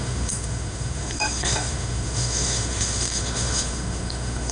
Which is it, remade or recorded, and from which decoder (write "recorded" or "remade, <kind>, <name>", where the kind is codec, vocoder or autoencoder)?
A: remade, autoencoder, DAC-VAE